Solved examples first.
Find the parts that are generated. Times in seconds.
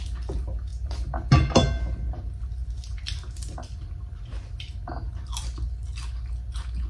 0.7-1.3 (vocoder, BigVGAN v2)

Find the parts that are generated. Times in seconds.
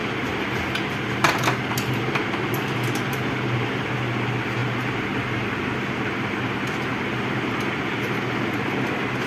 none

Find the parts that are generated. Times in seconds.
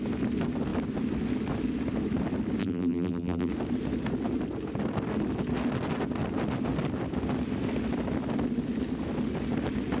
2.6-3.5 (vocoder, BigVGAN v2)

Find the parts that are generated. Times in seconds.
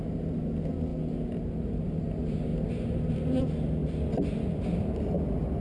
3.8-4.8 (vocoder, BigVGAN v2)